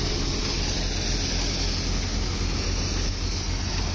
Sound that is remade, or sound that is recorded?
recorded